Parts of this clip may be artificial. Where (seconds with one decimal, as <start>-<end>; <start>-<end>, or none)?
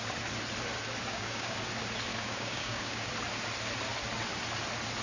1.1-1.6; 2.1-3.1